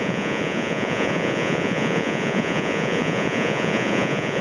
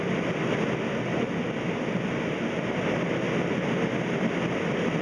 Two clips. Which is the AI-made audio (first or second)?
first